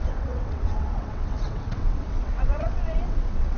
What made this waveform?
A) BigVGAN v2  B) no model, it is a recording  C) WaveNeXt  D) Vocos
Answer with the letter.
C